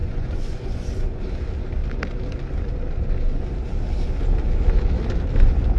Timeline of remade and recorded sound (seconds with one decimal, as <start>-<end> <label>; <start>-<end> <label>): 0.0-1.2 remade; 1.2-5.8 recorded